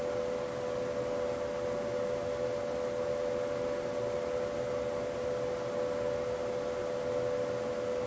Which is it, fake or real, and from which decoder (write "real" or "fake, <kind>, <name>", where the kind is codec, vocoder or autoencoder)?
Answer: real